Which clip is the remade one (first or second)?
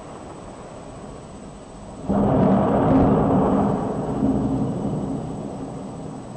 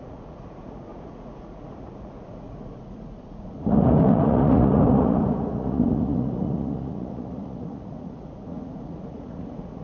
second